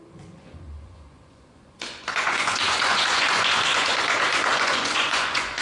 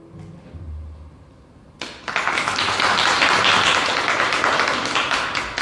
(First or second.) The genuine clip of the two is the second